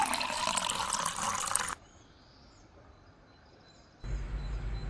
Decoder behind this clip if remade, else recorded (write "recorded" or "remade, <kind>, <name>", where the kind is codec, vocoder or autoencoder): recorded